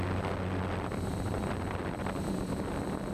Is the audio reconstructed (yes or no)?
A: no